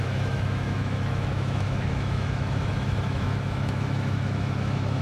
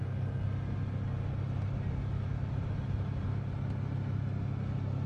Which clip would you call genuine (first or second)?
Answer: second